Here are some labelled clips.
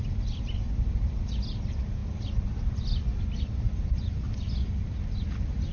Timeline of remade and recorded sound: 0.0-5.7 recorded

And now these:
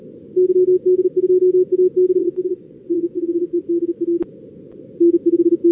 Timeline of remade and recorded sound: 0.0-2.2 recorded; 2.2-3.6 remade; 3.6-5.7 recorded

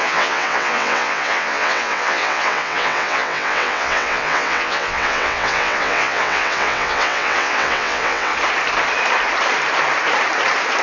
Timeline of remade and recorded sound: 0.0-8.3 remade; 8.3-10.8 recorded

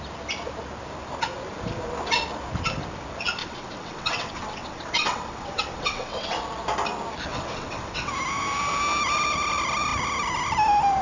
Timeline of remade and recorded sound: 0.0-3.4 recorded; 3.4-6.4 remade; 6.4-7.3 recorded; 7.3-8.1 remade; 8.1-11.0 recorded

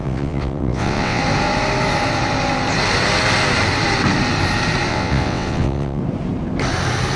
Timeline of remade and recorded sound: 0.0-1.2 remade; 1.2-4.9 recorded; 4.9-6.0 remade; 6.0-7.2 recorded

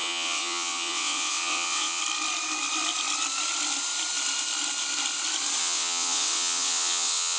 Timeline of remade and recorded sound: 0.0-2.0 remade; 2.0-5.6 recorded; 5.6-7.4 remade

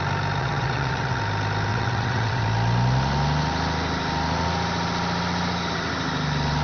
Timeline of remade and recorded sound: 0.0-0.4 recorded; 0.4-1.2 remade; 1.2-1.7 recorded; 1.7-2.4 remade; 2.4-6.6 recorded